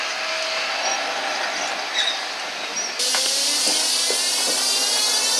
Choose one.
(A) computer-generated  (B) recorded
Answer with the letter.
B